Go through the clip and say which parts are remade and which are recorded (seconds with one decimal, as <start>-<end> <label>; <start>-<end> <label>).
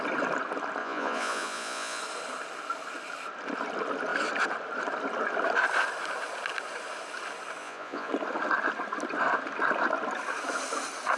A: 0.0-0.8 recorded; 0.8-2.0 remade; 2.0-7.6 recorded; 7.6-8.1 remade; 8.1-11.2 recorded